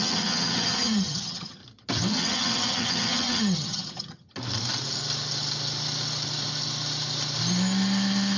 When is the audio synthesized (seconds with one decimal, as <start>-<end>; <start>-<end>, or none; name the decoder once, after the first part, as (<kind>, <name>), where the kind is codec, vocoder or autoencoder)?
0.0-1.6 (vocoder, HiFi-GAN); 2.1-4.3